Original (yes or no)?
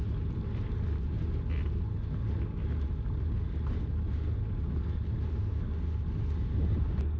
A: yes